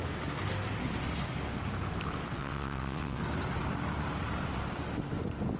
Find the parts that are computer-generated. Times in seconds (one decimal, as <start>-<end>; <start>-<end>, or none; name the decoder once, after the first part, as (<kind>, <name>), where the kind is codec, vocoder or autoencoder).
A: 2.4-3.2 (vocoder, WaveNeXt)

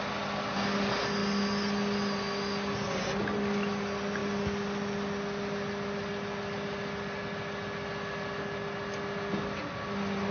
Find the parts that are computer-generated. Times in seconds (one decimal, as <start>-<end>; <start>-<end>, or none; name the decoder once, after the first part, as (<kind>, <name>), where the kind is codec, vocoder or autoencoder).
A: none

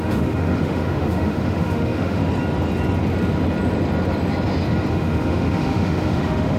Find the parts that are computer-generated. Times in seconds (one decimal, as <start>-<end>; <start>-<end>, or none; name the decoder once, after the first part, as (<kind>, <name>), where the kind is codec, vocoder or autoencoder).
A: 0.0-2.2 (autoencoder, DAC-VAE); 4.9-6.6

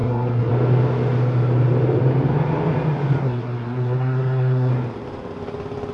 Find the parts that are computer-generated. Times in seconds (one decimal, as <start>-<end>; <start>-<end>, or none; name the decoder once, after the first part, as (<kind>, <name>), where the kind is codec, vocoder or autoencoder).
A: 0.0-0.5 (codec, SNAC); 3.2-4.7